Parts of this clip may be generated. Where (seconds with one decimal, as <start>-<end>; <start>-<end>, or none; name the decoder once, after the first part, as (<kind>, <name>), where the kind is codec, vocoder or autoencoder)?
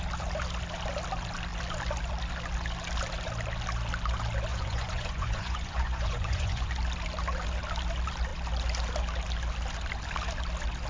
4.5-6.7 (vocoder, Vocos)